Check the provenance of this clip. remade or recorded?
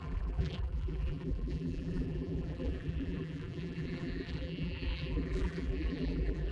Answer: remade